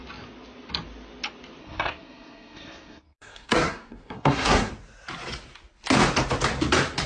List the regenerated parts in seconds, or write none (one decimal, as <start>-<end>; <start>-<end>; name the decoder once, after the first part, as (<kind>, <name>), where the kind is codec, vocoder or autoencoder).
1.6-4.7 (codec, SNAC)